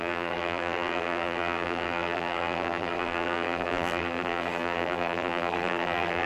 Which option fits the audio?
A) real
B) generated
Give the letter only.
B